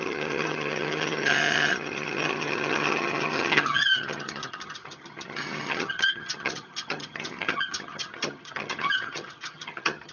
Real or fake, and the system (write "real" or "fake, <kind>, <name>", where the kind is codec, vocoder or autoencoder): fake, vocoder, HiFi-GAN